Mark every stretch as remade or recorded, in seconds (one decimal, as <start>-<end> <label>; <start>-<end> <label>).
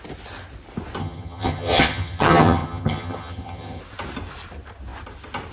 0.0-1.0 recorded; 1.0-3.8 remade; 3.8-5.5 recorded